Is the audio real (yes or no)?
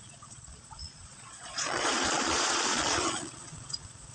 no